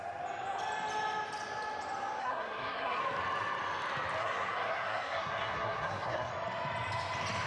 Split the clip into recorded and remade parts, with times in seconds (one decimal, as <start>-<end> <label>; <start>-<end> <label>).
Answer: 0.0-2.2 recorded; 2.2-3.0 remade; 3.0-4.2 recorded; 4.2-6.3 remade; 6.3-7.5 recorded